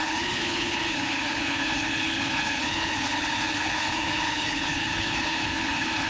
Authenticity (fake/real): fake